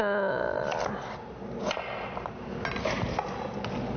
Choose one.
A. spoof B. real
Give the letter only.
B